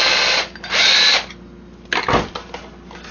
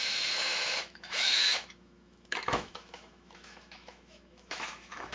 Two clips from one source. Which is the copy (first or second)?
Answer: second